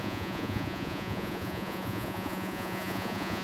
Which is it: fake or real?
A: fake